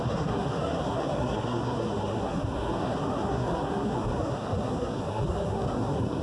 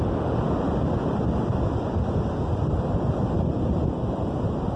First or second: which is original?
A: second